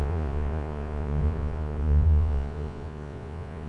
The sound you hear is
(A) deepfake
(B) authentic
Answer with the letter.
A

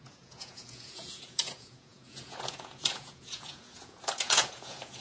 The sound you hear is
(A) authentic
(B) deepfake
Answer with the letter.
B